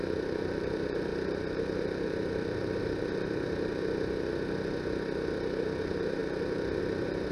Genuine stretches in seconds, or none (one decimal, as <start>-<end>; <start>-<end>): 3.7-5.8

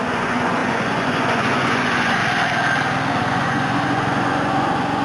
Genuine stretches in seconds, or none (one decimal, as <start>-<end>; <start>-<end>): 2.2-3.2

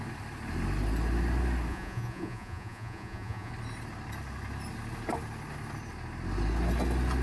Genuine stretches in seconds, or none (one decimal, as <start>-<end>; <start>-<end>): 0.0-1.7; 3.5-7.2